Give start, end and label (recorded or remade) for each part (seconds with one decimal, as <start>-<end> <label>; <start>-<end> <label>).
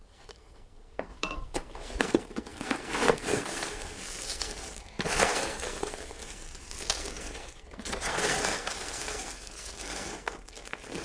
0.0-11.0 remade